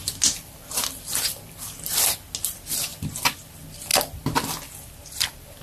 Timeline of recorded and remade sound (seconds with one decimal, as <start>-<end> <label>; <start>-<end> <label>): 0.0-1.9 remade; 1.9-3.9 recorded; 3.9-5.6 remade